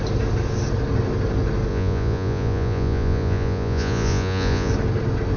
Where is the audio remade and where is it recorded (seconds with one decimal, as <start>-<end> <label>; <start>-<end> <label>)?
0.0-1.7 recorded; 1.7-4.7 remade; 4.7-5.4 recorded